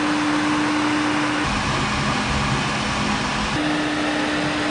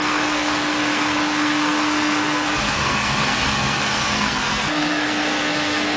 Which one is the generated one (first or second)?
second